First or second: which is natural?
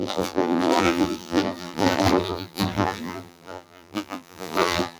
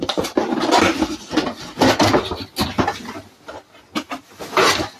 second